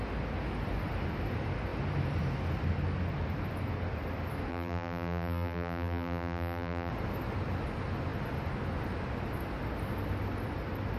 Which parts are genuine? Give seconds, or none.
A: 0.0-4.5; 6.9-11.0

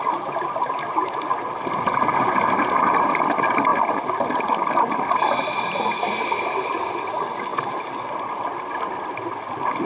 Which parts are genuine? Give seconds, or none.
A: 0.0-9.9

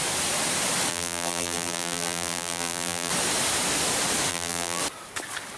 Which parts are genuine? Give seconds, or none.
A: 0.0-0.9; 3.1-4.3; 4.8-5.6

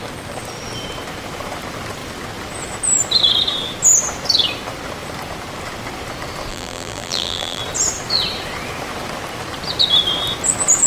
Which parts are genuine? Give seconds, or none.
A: 0.0-6.5; 7.6-10.9

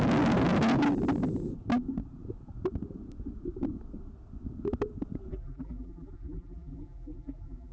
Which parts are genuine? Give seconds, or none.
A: 0.0-5.3

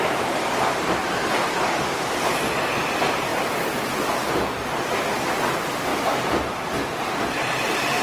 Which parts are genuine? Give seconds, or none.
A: 1.0-1.7; 3.3-5.4; 5.9-7.3